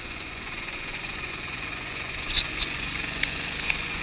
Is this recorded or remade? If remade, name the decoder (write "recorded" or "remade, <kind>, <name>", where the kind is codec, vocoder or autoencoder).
remade, vocoder, Vocos